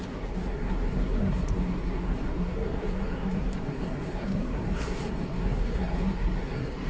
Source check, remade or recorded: remade